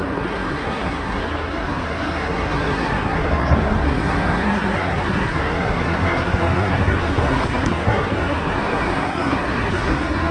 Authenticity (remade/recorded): remade